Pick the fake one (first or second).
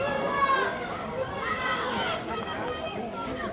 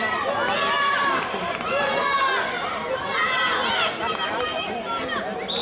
first